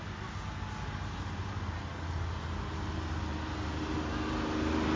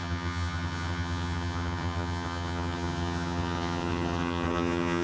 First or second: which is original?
first